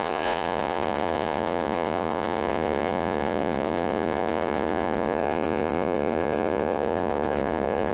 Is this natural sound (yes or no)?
no